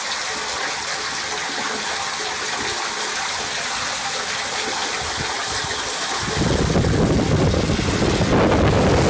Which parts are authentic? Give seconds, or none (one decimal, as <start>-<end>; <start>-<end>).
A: 0.0-9.1